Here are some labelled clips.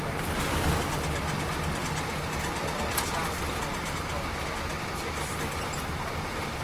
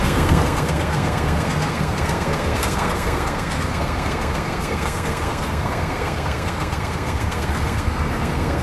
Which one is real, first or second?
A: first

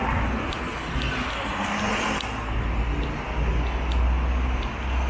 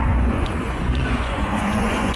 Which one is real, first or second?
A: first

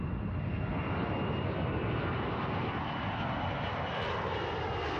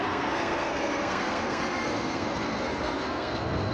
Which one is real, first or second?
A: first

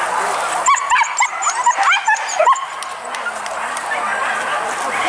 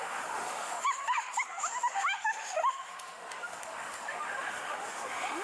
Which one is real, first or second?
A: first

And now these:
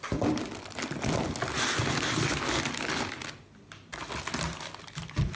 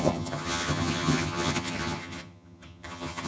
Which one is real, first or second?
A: first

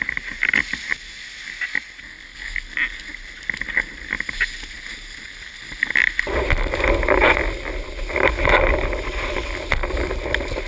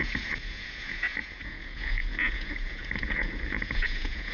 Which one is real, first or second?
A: first